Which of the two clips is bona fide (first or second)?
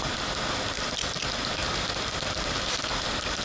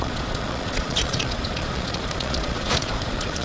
first